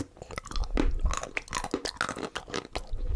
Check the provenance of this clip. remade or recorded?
recorded